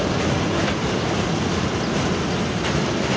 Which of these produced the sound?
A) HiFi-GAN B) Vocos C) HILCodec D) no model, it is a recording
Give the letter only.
D